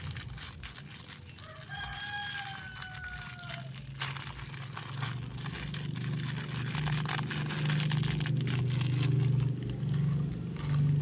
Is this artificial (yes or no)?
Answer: no